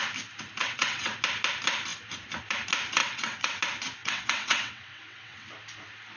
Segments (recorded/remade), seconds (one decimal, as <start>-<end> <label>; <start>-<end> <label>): 0.0-0.6 recorded; 0.6-1.1 remade; 1.1-3.0 recorded; 3.0-3.6 remade; 3.6-4.0 recorded; 4.0-5.5 remade; 5.5-6.2 recorded

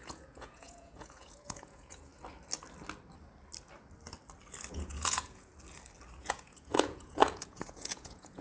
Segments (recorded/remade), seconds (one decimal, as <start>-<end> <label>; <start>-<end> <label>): 0.0-2.1 remade; 2.1-4.7 recorded; 4.7-5.5 remade; 5.5-6.2 recorded; 6.2-8.4 remade